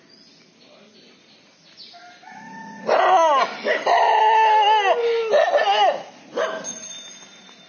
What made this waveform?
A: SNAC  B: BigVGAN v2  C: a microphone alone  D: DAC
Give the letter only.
C